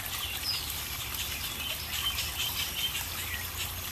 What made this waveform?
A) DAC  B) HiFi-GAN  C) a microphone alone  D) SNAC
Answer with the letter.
C